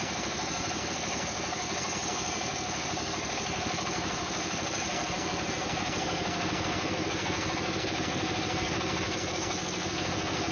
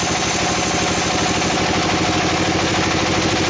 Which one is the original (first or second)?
second